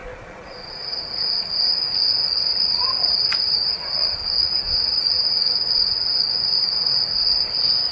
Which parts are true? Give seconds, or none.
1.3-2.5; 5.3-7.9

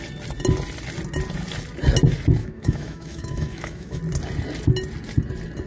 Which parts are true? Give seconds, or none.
0.0-2.4; 4.0-5.7